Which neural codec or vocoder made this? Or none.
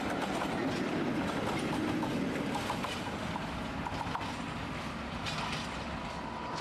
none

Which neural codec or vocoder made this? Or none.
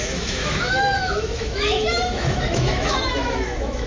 autoencoder, DAC-VAE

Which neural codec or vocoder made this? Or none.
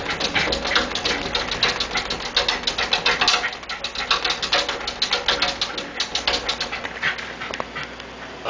none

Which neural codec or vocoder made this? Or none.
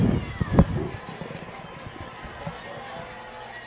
none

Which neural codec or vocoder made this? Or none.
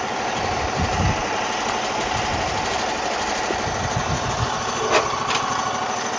none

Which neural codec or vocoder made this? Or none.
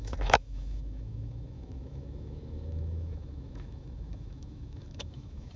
autoencoder, DAC-VAE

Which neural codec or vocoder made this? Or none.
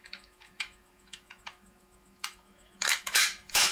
autoencoder, DAC-VAE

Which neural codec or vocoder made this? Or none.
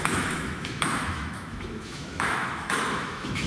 autoencoder, DAC-VAE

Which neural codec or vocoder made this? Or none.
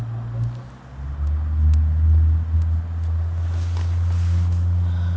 none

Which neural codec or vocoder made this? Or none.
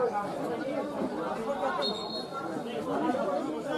none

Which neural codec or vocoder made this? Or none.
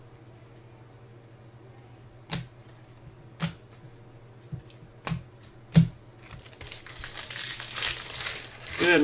none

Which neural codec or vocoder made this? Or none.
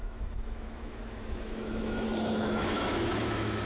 autoencoder, DAC-VAE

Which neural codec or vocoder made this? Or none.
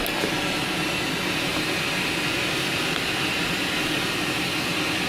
none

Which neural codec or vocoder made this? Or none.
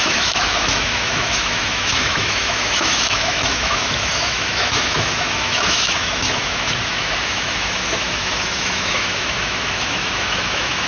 autoencoder, DAC-VAE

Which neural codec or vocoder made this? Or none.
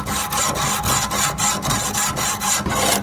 none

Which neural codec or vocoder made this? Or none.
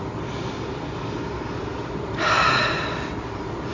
none